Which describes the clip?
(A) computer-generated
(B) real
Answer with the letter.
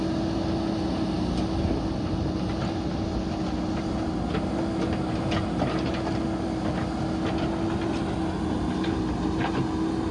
B